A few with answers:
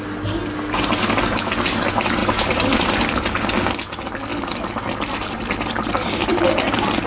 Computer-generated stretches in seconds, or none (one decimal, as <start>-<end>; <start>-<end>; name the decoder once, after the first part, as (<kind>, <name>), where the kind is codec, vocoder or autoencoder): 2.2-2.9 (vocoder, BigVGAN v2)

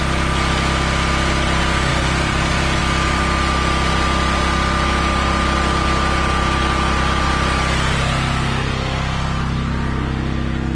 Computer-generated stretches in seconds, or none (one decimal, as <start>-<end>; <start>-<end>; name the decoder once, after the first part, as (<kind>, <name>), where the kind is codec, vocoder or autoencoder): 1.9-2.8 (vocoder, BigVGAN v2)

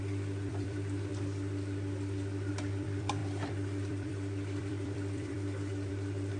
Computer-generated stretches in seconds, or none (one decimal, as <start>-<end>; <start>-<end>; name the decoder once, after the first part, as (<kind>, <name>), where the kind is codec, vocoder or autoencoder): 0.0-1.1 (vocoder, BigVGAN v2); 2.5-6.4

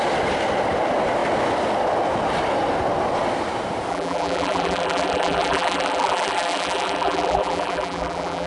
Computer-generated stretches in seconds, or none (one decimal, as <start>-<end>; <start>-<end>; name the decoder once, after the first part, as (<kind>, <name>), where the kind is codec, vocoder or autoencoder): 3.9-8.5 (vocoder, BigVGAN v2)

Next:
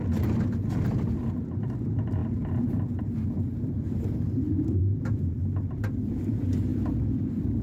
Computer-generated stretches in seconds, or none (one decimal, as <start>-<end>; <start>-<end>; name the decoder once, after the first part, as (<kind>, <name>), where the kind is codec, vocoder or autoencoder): 4.8-6.1 (vocoder, BigVGAN v2); 6.7-7.6

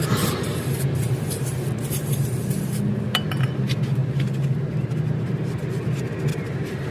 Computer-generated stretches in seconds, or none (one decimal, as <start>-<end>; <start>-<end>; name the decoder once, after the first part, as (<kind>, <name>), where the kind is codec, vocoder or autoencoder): 6.3-6.9 (vocoder, BigVGAN v2)

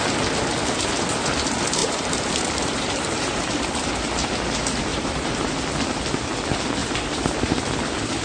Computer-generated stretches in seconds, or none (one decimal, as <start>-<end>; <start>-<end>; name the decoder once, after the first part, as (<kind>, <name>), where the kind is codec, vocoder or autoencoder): 1.8-3.3 (vocoder, BigVGAN v2); 4.9-5.5; 6.8-7.7